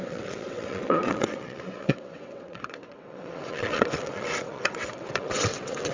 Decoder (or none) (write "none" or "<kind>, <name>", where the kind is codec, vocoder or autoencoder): vocoder, WaveNeXt